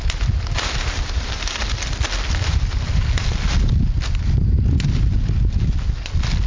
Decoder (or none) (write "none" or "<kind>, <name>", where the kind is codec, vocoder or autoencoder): none